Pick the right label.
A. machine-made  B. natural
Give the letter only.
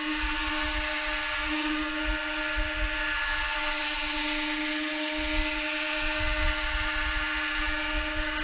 B